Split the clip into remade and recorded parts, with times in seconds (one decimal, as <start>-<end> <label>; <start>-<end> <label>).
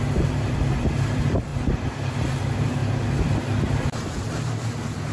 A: 0.0-2.8 remade; 2.8-3.6 recorded; 3.6-5.1 remade